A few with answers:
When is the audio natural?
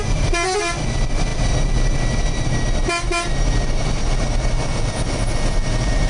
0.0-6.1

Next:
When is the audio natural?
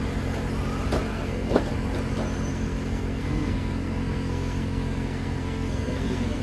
0.0-1.1; 1.7-2.5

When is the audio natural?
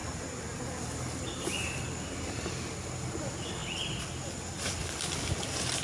0.0-5.8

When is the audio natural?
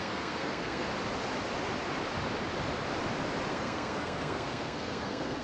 0.9-3.5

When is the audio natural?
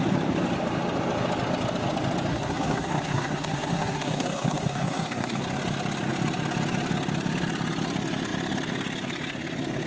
0.0-2.3; 5.4-9.9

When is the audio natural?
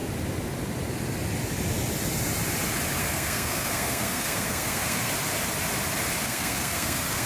0.0-3.0; 5.1-6.2